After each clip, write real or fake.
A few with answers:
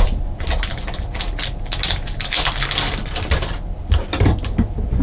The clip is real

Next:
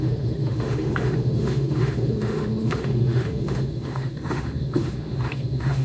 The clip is fake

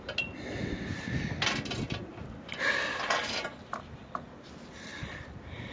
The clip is real